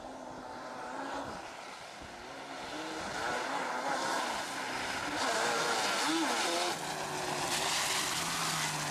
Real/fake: real